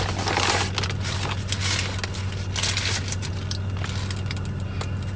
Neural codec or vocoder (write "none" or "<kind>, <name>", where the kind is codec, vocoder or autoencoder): none